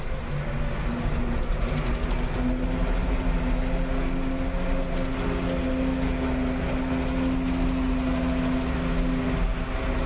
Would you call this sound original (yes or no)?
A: yes